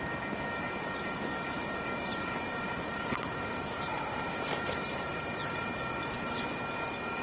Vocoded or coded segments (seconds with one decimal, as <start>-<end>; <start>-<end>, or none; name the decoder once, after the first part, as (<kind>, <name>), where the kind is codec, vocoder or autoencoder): 2.1-6.4 (vocoder, BigVGAN v2)